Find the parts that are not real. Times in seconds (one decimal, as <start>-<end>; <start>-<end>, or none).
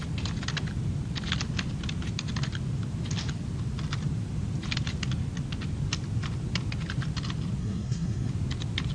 7.6-8.3